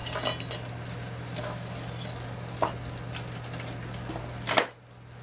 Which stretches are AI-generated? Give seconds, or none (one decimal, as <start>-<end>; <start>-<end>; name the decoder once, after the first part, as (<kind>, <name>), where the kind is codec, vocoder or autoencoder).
none